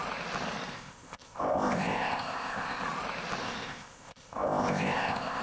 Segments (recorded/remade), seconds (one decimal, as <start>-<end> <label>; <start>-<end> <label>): 0.0-0.7 recorded; 0.7-2.8 remade; 2.8-3.4 recorded; 3.4-5.4 remade